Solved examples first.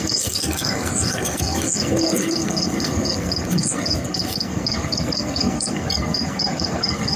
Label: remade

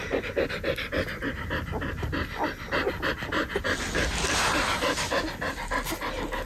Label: recorded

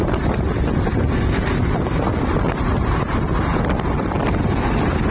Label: recorded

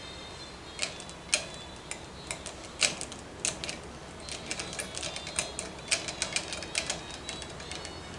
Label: recorded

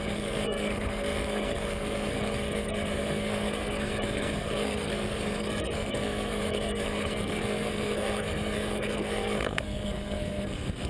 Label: remade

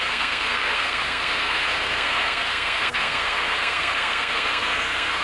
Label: remade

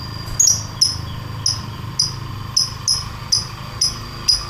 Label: recorded